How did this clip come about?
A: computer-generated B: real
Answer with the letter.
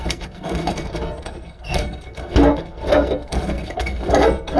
A